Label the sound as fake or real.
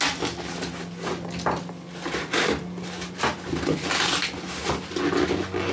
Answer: real